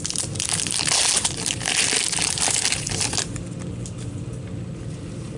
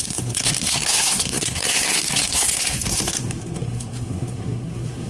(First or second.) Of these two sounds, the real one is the first